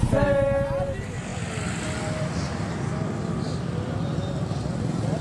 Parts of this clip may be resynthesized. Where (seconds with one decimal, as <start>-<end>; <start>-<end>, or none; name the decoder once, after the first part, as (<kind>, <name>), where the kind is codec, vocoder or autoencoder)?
none